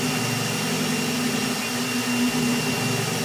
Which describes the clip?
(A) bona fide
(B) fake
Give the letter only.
A